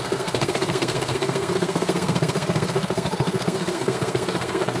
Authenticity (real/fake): fake